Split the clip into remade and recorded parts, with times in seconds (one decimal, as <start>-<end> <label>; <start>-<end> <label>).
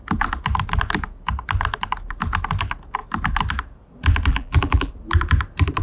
0.0-4.3 recorded; 4.3-4.9 remade; 4.9-5.8 recorded